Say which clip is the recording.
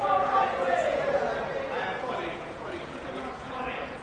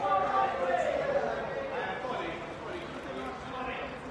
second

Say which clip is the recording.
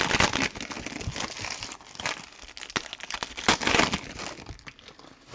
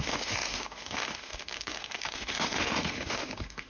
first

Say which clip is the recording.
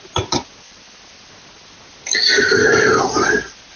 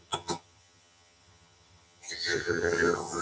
first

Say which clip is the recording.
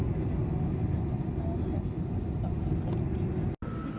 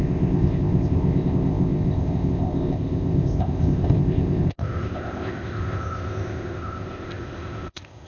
first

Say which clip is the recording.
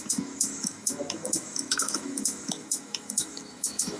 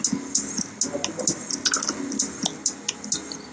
second